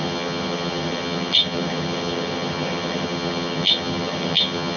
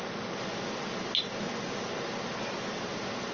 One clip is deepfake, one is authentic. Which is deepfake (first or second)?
first